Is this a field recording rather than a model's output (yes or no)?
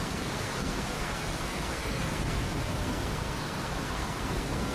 no